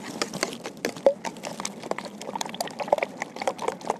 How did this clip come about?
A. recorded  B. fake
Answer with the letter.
A